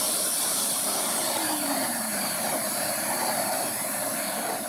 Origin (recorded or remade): remade